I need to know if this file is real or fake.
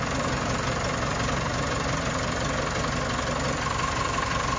real